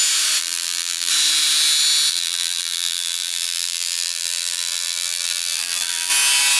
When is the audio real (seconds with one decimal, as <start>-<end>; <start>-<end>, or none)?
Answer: 0.0-0.4; 1.1-2.1; 6.1-6.6